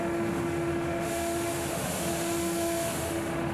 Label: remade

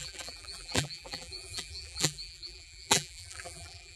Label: remade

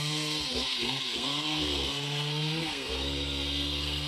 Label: remade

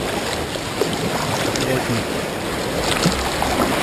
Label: recorded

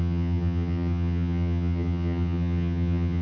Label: remade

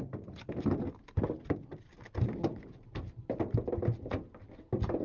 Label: recorded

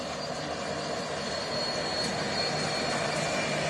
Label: recorded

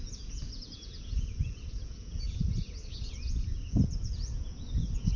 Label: remade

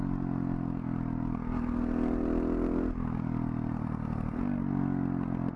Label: recorded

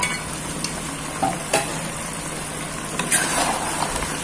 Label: recorded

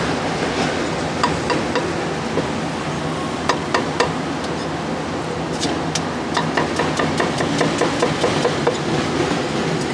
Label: recorded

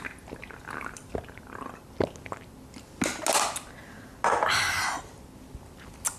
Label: recorded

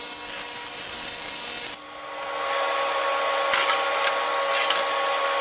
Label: recorded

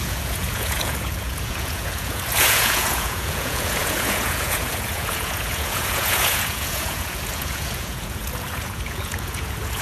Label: remade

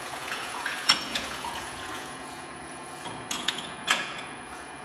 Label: remade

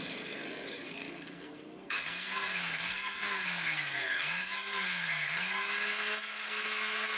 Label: remade